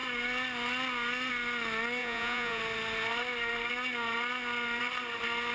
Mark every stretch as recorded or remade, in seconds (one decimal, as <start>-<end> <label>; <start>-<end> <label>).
0.0-2.0 recorded; 2.0-2.6 remade; 2.6-5.5 recorded